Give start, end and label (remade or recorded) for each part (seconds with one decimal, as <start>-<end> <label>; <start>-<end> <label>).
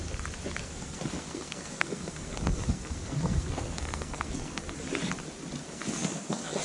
0.0-0.6 recorded; 0.6-4.6 remade; 4.6-5.6 recorded; 5.6-6.6 remade